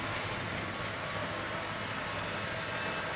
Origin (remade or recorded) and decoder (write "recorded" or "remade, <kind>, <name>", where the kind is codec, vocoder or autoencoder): recorded